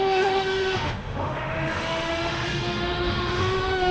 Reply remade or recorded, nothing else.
remade